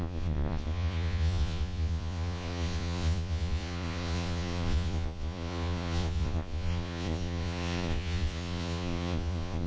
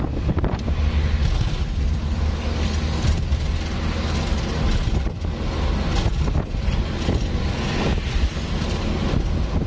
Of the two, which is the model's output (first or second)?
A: first